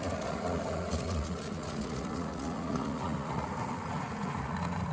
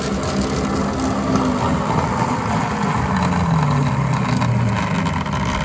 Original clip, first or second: second